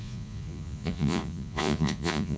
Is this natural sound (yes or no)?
no